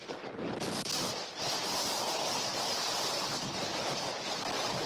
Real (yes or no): yes